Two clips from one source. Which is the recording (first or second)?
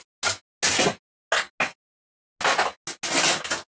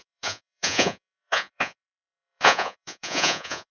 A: first